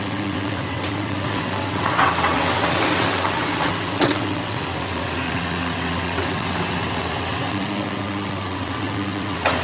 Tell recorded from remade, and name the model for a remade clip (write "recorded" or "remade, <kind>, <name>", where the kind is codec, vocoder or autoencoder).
remade, vocoder, WaveNeXt